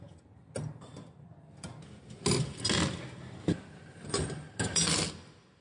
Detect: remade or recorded recorded